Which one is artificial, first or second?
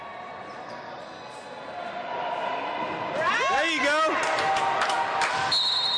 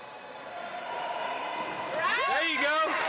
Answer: second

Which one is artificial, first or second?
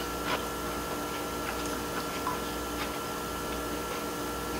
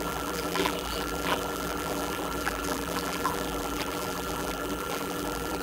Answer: second